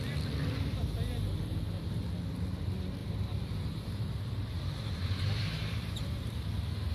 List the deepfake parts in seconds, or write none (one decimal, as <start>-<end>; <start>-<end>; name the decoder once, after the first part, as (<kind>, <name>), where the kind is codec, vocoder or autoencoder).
3.0-6.4 (vocoder, BigVGAN v2)